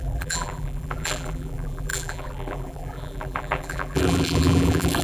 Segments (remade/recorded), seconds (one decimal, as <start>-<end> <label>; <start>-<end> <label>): 0.0-5.0 remade